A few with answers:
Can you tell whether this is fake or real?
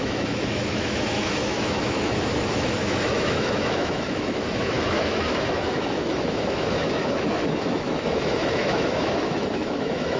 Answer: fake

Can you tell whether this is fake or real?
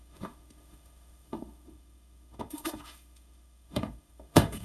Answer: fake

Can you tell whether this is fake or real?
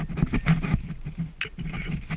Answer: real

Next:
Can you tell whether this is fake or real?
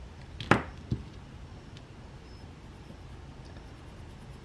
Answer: real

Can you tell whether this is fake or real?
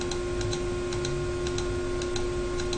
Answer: real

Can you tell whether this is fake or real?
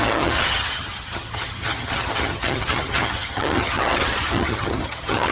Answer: fake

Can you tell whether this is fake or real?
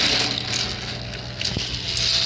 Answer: real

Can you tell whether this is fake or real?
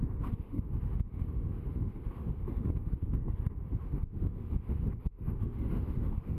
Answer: fake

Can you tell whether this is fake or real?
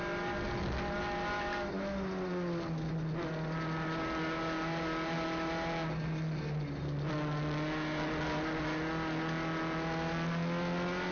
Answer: real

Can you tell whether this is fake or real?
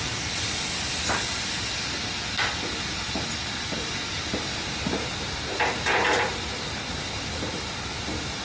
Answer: real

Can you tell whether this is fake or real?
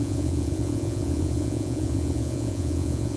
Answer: fake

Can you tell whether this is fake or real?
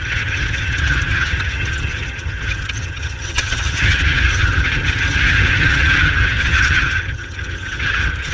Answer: fake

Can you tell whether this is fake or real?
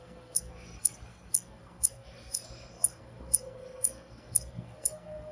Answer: fake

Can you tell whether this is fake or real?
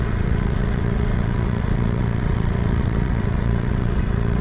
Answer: fake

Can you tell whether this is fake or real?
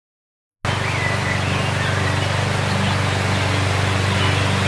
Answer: real